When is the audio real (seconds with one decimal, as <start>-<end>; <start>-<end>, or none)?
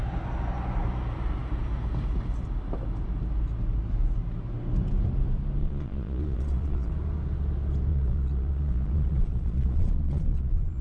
0.0-5.6; 6.9-7.9